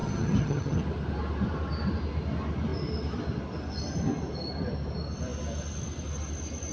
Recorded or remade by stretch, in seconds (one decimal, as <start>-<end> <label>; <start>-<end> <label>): 0.0-0.8 remade; 0.8-6.7 recorded